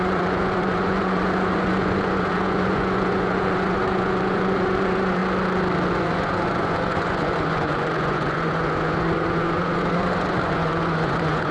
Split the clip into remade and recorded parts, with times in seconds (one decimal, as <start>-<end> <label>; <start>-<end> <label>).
0.0-5.2 remade; 5.2-5.9 recorded; 5.9-11.5 remade